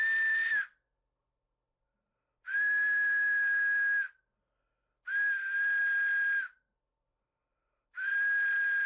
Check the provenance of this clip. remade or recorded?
recorded